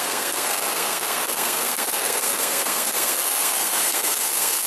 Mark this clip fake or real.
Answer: fake